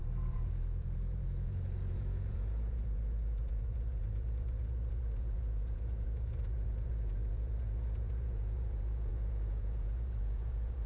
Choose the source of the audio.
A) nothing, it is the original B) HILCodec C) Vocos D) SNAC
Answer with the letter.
C